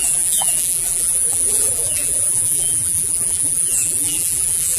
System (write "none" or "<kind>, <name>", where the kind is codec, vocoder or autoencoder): vocoder, BigVGAN v2